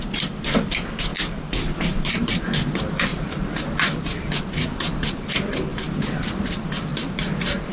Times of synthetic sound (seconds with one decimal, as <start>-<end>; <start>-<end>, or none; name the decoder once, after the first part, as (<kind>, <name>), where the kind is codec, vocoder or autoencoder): none